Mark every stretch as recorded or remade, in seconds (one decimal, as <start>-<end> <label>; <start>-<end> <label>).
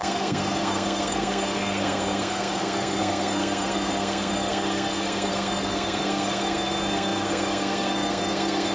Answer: 0.0-8.7 remade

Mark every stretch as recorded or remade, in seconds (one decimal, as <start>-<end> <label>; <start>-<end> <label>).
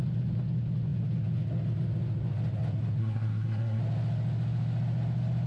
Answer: 0.0-3.0 recorded; 3.0-3.8 remade; 3.8-5.5 recorded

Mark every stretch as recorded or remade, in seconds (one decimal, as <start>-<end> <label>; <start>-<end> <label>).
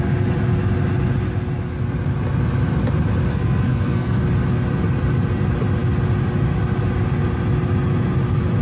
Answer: 0.0-3.3 recorded; 3.3-4.2 remade; 4.2-8.6 recorded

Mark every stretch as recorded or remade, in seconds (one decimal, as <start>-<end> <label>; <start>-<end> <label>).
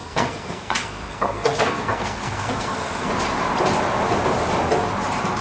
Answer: 0.0-3.1 remade; 3.1-5.4 recorded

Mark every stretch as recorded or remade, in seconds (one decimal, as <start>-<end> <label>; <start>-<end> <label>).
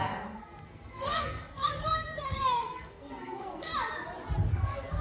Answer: 0.0-3.7 remade; 3.7-4.5 recorded; 4.5-5.0 remade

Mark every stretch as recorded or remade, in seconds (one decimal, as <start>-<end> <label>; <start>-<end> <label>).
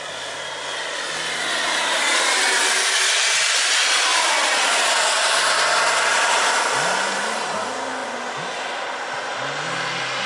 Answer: 0.0-10.3 recorded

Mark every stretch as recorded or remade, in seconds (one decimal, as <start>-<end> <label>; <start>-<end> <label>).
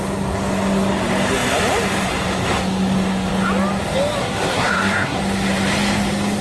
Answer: 0.0-4.2 recorded; 4.2-5.2 remade; 5.2-6.4 recorded